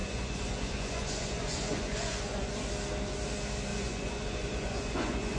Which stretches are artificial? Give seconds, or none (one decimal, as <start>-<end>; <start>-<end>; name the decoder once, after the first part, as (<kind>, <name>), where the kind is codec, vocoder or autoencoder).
0.0-2.7 (vocoder, Vocos); 3.7-5.4